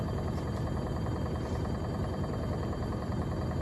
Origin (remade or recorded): remade